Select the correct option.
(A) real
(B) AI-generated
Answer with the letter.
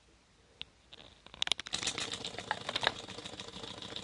A